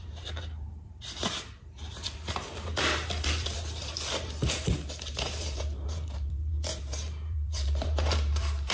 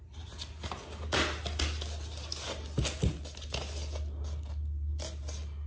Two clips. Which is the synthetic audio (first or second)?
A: first